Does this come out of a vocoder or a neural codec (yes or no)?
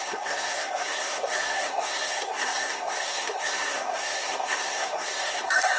yes